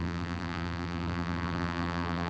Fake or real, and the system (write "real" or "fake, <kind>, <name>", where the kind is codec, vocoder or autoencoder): fake, vocoder, BigVGAN v2